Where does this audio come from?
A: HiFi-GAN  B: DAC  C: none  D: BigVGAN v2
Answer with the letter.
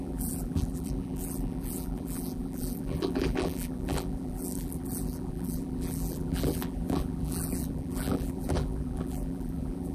D